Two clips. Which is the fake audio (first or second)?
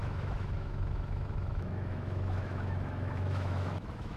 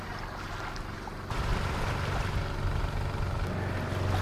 first